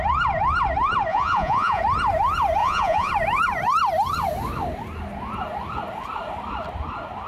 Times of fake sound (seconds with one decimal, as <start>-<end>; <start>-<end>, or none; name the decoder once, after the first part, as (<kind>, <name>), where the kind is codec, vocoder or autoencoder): 1.1-1.8 (vocoder, Vocos); 2.6-3.1